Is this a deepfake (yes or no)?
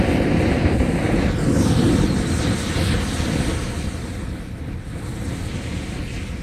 no